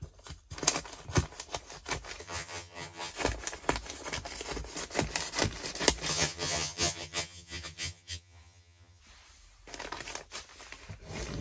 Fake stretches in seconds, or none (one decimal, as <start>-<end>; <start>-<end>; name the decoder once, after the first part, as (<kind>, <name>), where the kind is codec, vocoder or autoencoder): 2.2-3.1 (vocoder, HiFi-GAN); 6.1-9.0